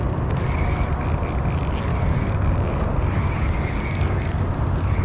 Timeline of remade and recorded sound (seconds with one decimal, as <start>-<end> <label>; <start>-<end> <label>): 0.0-1.9 recorded; 1.9-4.4 remade; 4.4-5.0 recorded